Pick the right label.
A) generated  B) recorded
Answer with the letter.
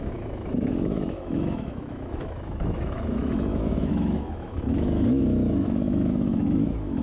A